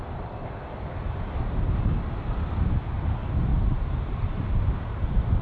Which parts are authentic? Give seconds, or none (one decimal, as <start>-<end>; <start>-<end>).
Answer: 0.0-3.5